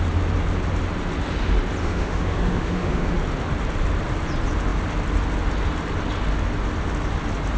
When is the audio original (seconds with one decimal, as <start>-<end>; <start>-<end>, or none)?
0.0-1.8; 3.1-7.6